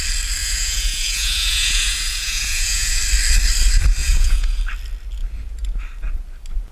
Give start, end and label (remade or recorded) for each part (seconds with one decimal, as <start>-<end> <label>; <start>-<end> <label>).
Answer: 0.0-0.4 recorded; 0.4-3.0 remade; 3.0-4.0 recorded; 4.0-4.6 remade; 4.6-6.7 recorded